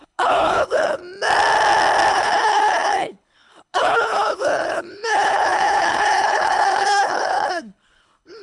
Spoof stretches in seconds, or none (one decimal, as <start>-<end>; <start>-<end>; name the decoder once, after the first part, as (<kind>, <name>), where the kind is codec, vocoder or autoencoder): 0.0-1.0 (codec, HILCodec); 2.1-8.4